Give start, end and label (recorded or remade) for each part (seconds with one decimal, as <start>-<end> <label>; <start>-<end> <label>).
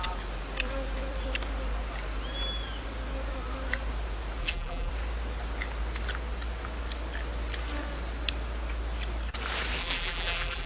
0.0-4.4 recorded; 4.4-4.9 remade; 4.9-9.8 recorded; 9.8-10.7 remade